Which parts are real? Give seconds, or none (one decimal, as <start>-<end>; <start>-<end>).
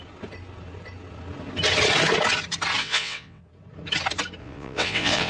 0.0-2.8; 3.4-4.4